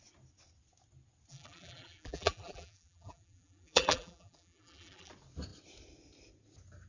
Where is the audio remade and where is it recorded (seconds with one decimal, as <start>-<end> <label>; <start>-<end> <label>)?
0.0-1.3 recorded; 1.3-5.1 remade; 5.1-6.9 recorded